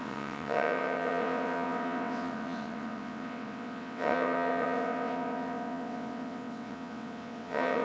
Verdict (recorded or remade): remade